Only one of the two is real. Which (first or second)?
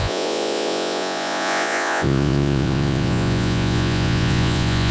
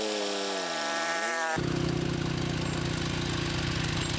second